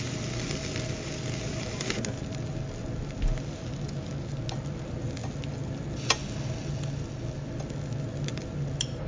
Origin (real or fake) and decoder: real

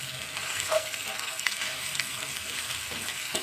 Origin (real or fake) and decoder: fake, codec, SNAC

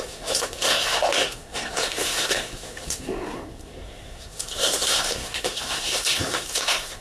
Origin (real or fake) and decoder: fake, codec, SNAC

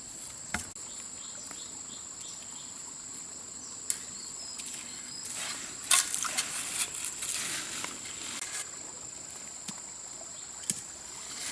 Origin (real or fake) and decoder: real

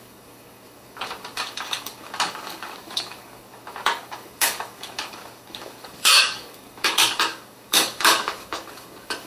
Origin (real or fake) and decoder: fake, codec, DAC